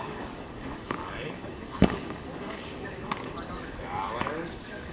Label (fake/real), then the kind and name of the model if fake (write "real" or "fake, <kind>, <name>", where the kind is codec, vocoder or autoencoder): fake, codec, DAC